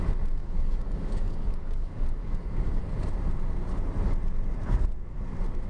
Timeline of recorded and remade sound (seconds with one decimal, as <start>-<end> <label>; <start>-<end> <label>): 0.0-0.4 recorded; 0.4-2.8 remade; 2.8-5.7 recorded